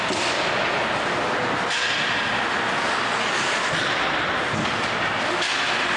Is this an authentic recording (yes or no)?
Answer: yes